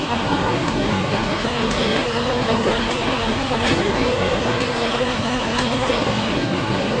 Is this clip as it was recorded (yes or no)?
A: no